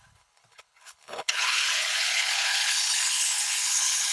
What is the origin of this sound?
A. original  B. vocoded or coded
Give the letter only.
B